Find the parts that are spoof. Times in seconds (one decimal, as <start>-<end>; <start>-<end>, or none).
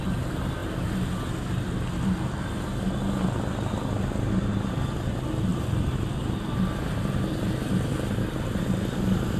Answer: none